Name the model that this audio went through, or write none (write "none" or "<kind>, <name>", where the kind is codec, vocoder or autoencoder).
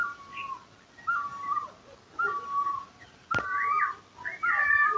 none